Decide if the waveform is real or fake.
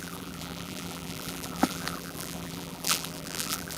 fake